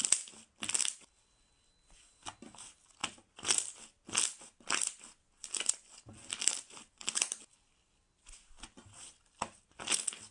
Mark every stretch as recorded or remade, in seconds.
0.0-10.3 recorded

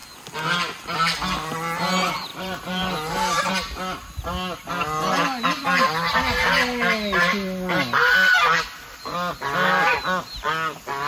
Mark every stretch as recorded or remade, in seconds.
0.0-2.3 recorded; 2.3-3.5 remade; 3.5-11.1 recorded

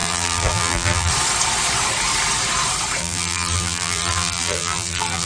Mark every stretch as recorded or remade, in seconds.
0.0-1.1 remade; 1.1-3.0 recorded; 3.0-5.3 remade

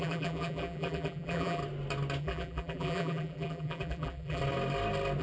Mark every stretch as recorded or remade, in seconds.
0.0-1.6 remade; 1.6-2.2 recorded; 2.2-4.4 remade; 4.4-5.2 recorded